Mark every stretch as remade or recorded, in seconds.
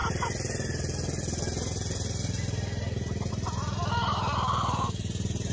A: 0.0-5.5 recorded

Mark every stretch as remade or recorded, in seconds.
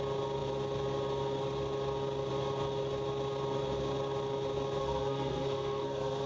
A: 0.0-4.8 recorded; 4.8-6.3 remade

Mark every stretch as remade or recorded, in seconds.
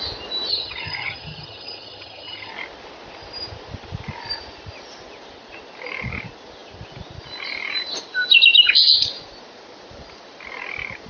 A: 0.0-0.5 recorded; 0.5-2.5 remade; 2.5-11.1 recorded